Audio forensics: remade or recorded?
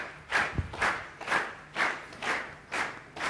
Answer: recorded